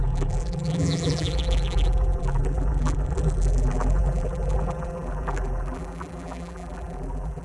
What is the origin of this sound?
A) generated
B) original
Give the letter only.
A